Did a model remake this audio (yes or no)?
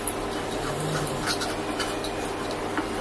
no